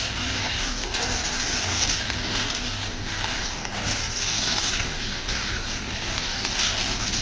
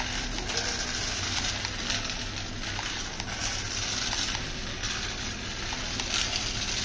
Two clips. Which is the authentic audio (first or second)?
second